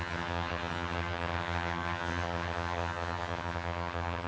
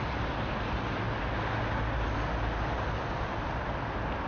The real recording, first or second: second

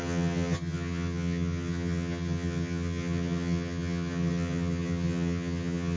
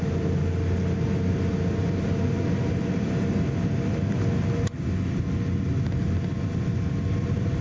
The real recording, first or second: second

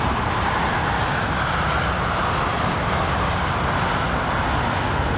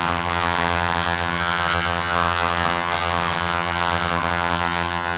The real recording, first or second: first